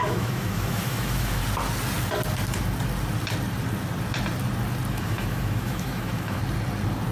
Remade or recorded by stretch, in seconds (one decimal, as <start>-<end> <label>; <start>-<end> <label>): 0.0-1.4 remade; 1.4-4.9 recorded; 4.9-6.4 remade; 6.4-7.1 recorded